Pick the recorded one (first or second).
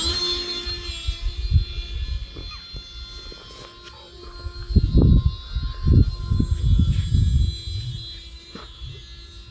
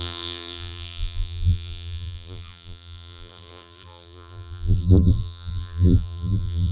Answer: first